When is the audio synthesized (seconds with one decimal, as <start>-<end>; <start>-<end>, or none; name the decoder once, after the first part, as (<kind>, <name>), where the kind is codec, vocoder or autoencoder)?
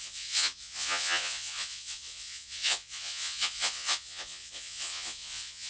0.0-5.7 (vocoder, Vocos)